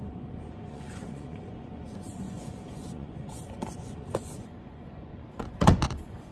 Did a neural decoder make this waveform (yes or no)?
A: yes